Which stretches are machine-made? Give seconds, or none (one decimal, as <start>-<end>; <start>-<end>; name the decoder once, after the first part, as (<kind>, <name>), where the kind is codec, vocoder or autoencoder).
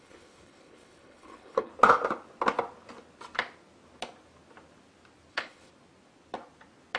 0.0-1.7 (codec, HILCodec); 5.3-5.7